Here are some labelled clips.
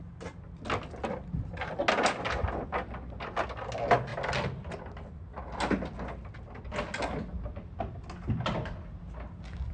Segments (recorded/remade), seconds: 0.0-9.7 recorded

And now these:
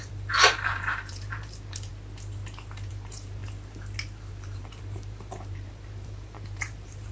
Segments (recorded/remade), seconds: 0.0-1.9 remade; 1.9-2.9 recorded; 2.9-3.4 remade; 3.4-4.3 recorded; 4.3-7.1 remade

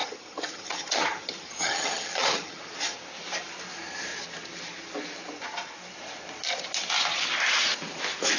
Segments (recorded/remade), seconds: 0.0-2.6 remade; 2.6-8.4 recorded

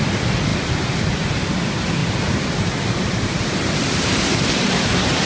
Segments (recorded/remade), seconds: 0.0-0.5 recorded; 0.5-1.3 remade; 1.3-2.0 recorded; 2.0-5.3 remade

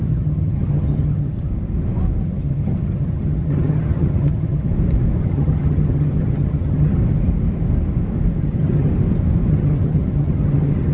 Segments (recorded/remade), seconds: 0.0-1.5 remade; 1.5-2.2 recorded; 2.2-4.7 remade; 4.7-5.2 recorded; 5.2-7.0 remade; 7.0-8.4 recorded; 8.4-8.9 remade; 8.9-9.5 recorded; 9.5-10.9 remade

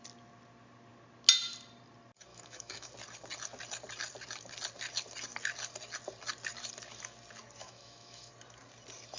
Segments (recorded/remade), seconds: 0.0-2.3 recorded; 2.3-2.9 remade; 2.9-7.6 recorded; 7.6-8.3 remade; 8.3-9.2 recorded

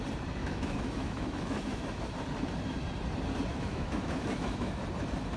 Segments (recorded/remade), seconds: 0.0-0.4 recorded; 0.4-2.0 remade; 2.0-3.5 recorded; 3.5-4.8 remade; 4.8-5.4 recorded

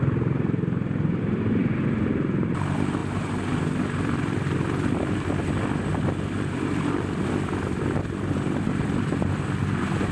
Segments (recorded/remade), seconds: 0.0-3.0 remade; 3.0-4.0 recorded; 4.0-10.1 remade